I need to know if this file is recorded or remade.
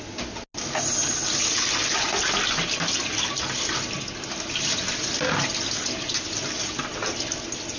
recorded